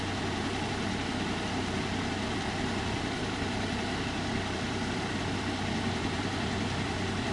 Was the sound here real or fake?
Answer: fake